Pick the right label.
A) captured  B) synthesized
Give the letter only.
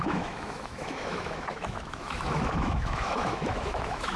B